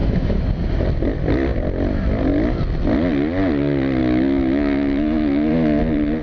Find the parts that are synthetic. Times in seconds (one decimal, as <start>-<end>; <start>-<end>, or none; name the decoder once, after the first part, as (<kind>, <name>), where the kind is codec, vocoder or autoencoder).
0.0-0.5 (autoencoder, DAC-VAE); 4.0-5.8